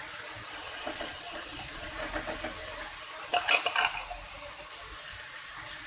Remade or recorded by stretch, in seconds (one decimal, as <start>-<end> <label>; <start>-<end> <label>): 0.0-0.6 recorded; 0.6-1.9 remade; 1.9-5.9 recorded